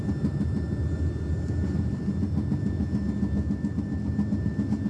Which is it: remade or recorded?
recorded